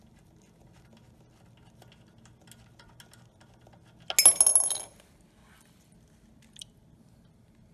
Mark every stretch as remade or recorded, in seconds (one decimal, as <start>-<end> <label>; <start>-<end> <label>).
0.0-7.7 recorded